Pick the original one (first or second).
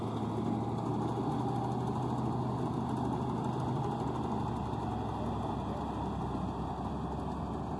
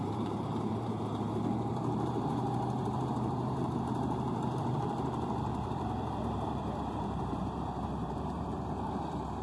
first